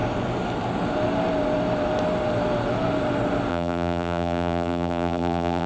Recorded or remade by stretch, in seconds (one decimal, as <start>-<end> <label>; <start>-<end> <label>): 0.0-3.5 recorded; 3.5-5.7 remade